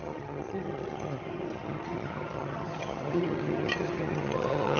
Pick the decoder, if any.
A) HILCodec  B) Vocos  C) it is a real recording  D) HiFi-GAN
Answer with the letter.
D